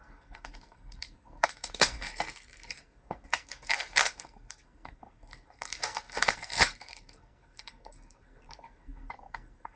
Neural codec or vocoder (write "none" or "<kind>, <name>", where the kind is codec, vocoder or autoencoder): codec, SNAC